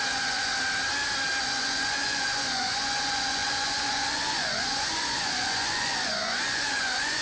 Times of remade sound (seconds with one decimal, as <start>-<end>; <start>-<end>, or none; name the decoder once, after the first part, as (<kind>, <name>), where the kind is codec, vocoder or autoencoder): 0.0-0.5 (vocoder, Vocos); 1.4-7.2